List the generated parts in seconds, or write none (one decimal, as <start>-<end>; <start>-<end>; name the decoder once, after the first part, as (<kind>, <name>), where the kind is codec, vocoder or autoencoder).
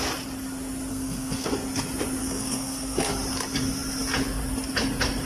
0.9-1.5 (codec, SNAC); 2.2-3.1